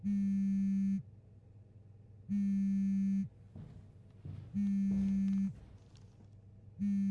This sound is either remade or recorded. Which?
recorded